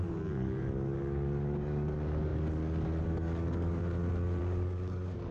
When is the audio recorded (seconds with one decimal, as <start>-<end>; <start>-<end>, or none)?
3.8-4.4